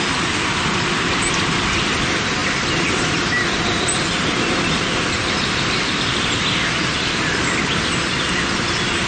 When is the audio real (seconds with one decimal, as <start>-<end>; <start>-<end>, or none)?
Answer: 0.0-9.1